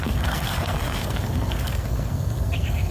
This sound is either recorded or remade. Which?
remade